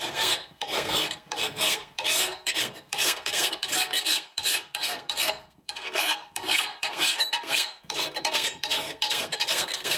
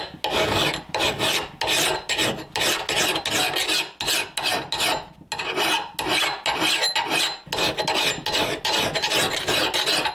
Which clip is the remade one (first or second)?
first